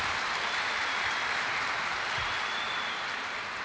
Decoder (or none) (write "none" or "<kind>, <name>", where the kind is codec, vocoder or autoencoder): none